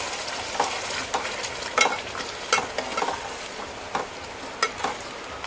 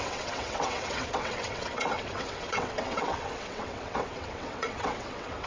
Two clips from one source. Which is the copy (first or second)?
second